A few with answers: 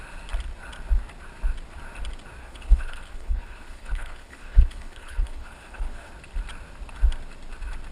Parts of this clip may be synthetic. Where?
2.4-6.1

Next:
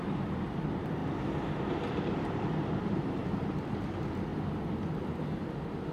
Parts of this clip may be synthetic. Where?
0.0-1.0; 2.0-5.9

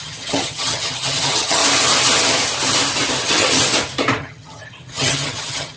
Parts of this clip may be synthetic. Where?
0.0-1.6; 3.2-3.6; 4.2-5.8

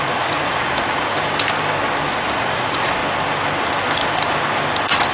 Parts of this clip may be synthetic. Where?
0.0-1.1; 2.1-3.0

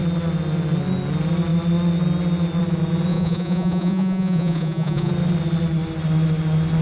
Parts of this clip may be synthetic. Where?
3.1-5.1

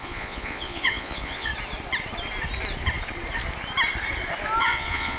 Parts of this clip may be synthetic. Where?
0.0-1.5; 4.6-5.2

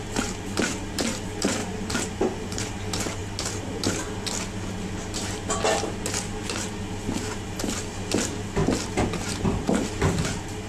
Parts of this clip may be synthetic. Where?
1.6-2.6

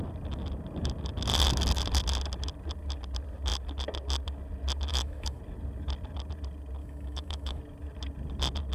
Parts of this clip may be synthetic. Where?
4.9-5.4; 6.8-7.6